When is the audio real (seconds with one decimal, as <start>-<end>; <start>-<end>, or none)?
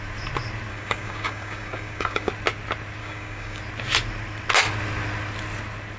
0.0-0.7; 2.3-3.0; 3.6-6.0